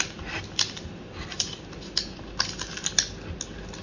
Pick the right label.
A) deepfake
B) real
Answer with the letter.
B